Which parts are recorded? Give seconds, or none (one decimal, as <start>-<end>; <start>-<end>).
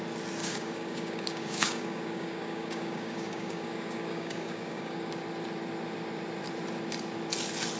0.0-0.4; 5.1-7.8